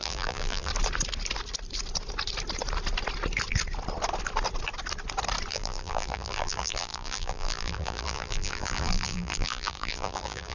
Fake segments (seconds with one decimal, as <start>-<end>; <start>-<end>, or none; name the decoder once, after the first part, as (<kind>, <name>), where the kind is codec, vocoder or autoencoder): 0.0-0.7 (vocoder, BigVGAN v2); 5.5-10.5

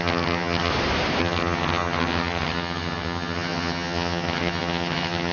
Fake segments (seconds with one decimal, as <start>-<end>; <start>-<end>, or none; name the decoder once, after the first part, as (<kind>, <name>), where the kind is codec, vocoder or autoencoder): 0.0-0.7 (vocoder, HiFi-GAN); 1.2-5.3

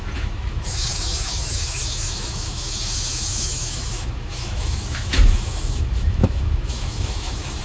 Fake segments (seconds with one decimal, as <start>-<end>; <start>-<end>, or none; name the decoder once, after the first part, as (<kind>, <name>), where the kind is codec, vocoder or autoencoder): 0.0-7.6 (autoencoder, DAC-VAE)

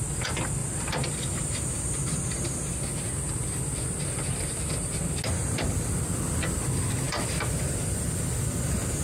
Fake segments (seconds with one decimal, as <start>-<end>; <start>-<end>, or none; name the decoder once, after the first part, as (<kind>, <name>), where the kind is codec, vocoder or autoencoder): none